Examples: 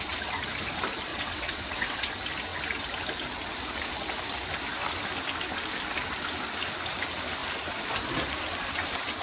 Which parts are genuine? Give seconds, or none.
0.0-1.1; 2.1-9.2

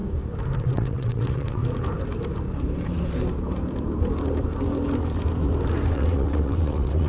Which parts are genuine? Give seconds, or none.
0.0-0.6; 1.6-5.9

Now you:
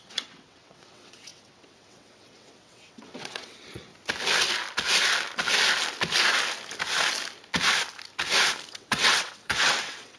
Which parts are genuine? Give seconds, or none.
3.9-8.7

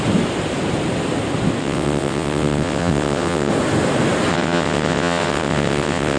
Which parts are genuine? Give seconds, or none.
0.0-1.6; 3.5-4.3

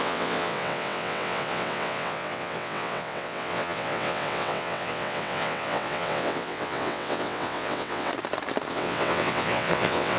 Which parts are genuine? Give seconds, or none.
8.1-8.7